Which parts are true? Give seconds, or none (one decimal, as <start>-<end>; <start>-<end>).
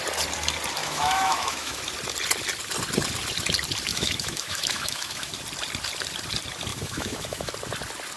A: 0.0-0.8; 1.8-3.9; 5.3-6.7; 7.5-8.2